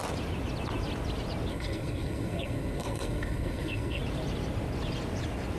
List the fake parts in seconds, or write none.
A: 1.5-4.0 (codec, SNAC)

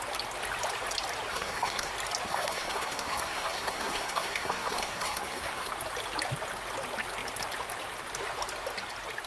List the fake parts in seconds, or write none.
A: 1.3-1.9 (codec, SNAC); 2.3-5.7

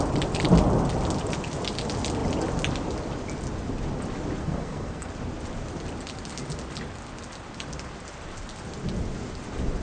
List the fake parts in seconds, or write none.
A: 4.4-5.1 (codec, SNAC)

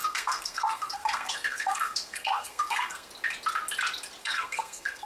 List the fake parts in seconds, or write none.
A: 0.0-3.1 (codec, SNAC); 4.2-5.1